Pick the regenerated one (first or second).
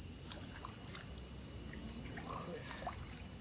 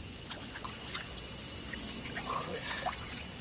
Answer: second